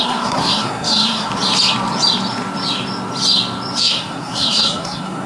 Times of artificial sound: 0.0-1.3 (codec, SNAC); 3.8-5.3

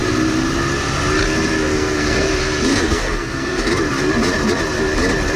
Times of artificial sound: 1.6-2.3 (codec, SNAC); 2.7-3.7

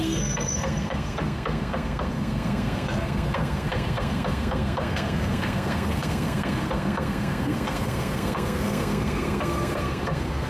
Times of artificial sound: 0.0-10.5 (codec, SNAC)

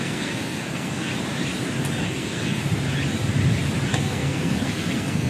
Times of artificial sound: 0.0-1.1 (codec, SNAC); 2.0-2.6; 3.9-5.3

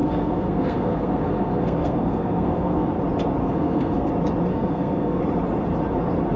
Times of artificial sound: 0.0-2.9 (codec, SNAC); 3.4-4.1; 4.5-5.2

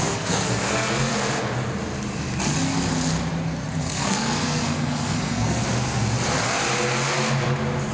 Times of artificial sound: 0.0-1.1 (codec, SNAC); 3.8-5.6